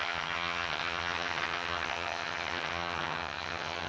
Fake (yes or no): yes